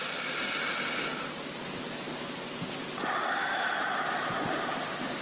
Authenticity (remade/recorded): recorded